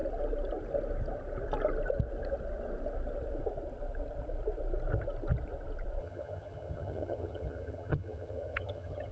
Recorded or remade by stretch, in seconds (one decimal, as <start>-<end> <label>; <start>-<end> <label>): 0.0-6.0 recorded; 6.0-9.1 remade